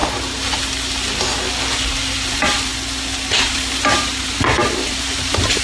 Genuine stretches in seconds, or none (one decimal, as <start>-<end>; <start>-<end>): 0.0-2.3; 2.7-3.5